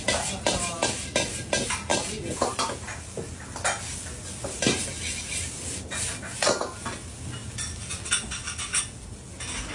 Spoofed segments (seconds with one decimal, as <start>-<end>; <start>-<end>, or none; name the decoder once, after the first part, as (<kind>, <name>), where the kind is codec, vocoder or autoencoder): none